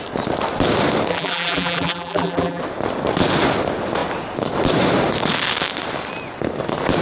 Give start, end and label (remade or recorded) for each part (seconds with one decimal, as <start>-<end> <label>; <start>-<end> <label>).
0.0-1.1 recorded; 1.1-2.6 remade; 2.6-7.0 recorded